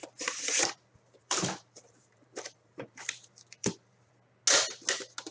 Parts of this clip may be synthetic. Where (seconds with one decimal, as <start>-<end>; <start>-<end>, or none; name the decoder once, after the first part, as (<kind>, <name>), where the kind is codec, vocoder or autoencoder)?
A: 0.0-3.0 (vocoder, BigVGAN v2); 3.6-4.1